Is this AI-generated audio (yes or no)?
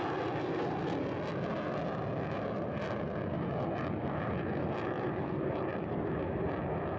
no